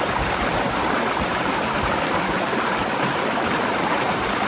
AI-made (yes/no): no